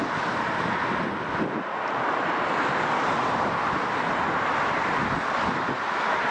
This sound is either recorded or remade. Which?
recorded